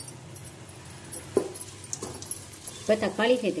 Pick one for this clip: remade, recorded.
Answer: recorded